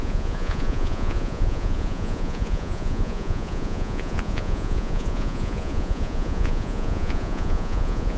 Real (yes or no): no